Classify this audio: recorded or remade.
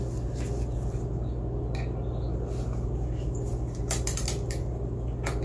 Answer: recorded